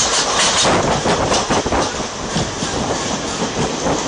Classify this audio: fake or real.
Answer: real